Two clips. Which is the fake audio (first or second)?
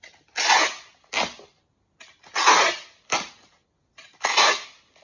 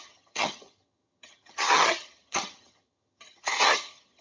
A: second